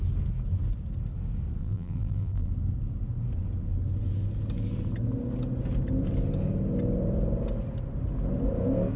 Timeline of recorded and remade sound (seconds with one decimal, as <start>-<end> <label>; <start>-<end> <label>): 0.0-1.6 recorded; 1.6-2.5 remade; 2.5-9.0 recorded